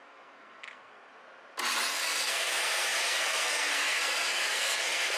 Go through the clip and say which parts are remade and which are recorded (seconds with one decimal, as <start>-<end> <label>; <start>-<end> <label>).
0.0-1.1 remade; 1.1-1.9 recorded; 1.9-5.2 remade